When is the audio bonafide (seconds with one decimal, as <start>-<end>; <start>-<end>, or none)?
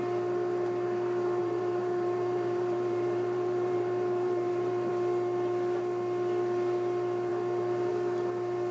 0.0-1.4; 4.9-8.7